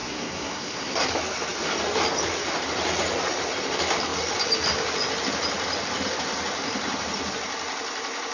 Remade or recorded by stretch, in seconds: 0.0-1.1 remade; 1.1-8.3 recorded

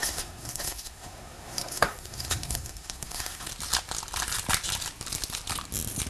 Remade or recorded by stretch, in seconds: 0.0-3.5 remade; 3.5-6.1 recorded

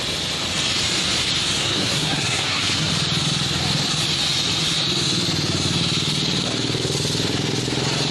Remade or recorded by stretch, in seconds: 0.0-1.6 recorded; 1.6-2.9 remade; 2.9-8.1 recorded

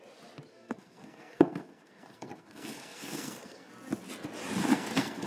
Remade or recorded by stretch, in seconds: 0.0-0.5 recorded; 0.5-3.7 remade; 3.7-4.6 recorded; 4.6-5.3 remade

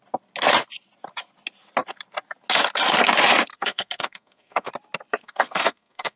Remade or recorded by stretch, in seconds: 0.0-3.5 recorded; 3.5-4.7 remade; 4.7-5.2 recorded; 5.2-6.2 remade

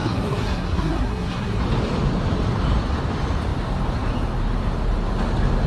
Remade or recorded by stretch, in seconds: 0.0-1.6 remade; 1.6-5.7 recorded

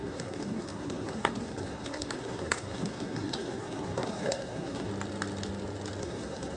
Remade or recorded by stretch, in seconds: 0.0-4.9 remade; 4.9-6.0 recorded; 6.0-6.6 remade